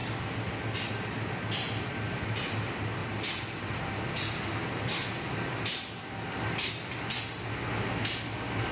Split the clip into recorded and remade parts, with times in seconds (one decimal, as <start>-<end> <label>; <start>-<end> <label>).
0.0-8.7 recorded